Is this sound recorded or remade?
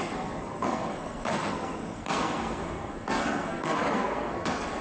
remade